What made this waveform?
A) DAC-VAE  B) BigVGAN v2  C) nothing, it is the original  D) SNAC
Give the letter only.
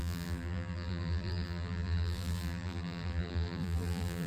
B